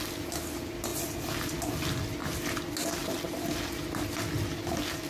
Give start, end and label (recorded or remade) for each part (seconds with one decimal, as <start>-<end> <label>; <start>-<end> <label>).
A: 0.0-5.1 recorded